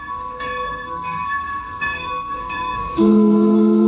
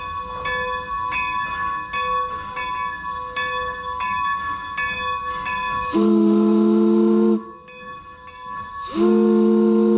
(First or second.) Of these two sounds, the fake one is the first